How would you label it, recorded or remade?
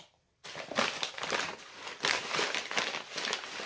recorded